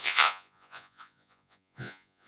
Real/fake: fake